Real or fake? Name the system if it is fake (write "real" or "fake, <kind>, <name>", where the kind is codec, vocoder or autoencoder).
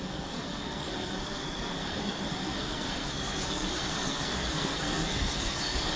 fake, codec, SNAC